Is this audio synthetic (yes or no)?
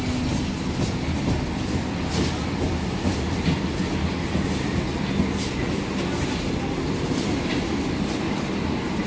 no